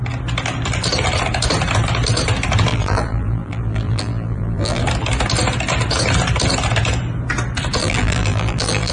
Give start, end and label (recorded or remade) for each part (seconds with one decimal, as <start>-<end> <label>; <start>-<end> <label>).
0.0-2.7 recorded; 2.7-4.8 remade; 4.8-7.8 recorded; 7.8-8.9 remade